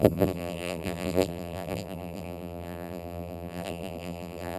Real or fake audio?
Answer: fake